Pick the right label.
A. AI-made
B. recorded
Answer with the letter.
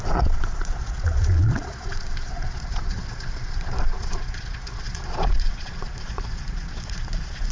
A